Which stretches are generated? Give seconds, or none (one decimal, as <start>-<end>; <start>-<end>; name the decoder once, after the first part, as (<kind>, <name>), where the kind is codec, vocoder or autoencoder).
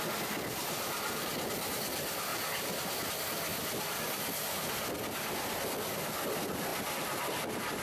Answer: 2.3-3.1 (vocoder, BigVGAN v2); 6.7-7.8